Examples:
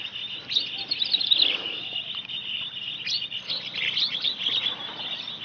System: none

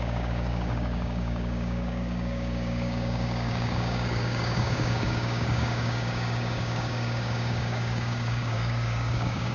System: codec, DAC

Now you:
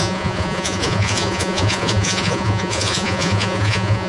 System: vocoder, Vocos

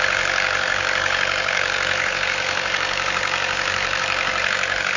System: codec, DAC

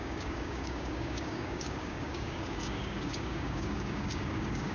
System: codec, DAC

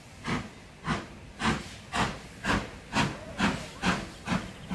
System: none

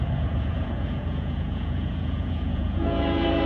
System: vocoder, Vocos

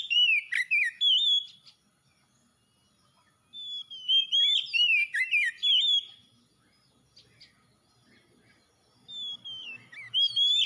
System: none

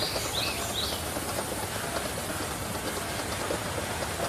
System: none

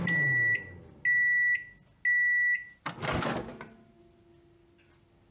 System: none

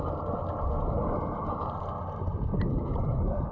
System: none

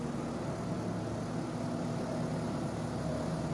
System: none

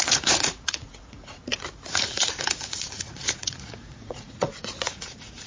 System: vocoder, Vocos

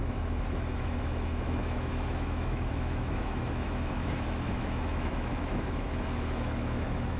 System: autoencoder, DAC-VAE